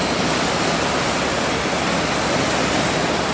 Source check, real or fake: real